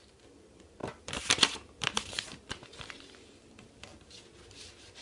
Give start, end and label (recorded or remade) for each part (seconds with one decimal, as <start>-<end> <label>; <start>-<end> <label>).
0.0-3.9 remade; 3.9-4.5 recorded; 4.5-5.0 remade